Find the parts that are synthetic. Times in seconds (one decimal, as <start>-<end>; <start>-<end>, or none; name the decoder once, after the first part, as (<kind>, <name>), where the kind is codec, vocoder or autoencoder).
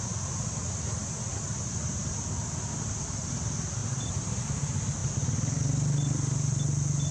3.8-4.3 (vocoder, BigVGAN v2)